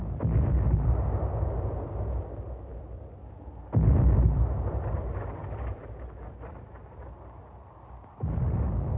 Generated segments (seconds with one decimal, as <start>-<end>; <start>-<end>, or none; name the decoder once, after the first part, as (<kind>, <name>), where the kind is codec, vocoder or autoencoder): none